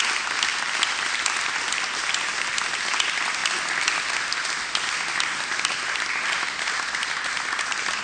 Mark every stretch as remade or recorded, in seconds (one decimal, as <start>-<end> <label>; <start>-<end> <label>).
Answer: 0.0-8.0 recorded